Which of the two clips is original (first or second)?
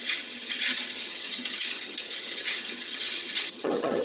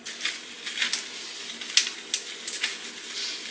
second